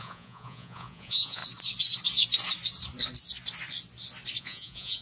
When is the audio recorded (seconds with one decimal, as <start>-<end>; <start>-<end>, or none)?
1.4-4.4